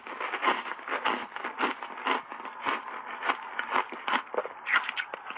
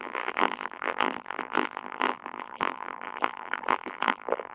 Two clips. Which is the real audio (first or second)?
first